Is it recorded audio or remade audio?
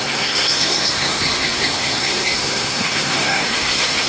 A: remade